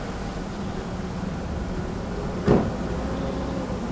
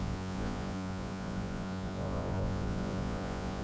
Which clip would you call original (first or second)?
first